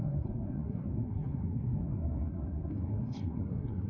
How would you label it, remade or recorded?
remade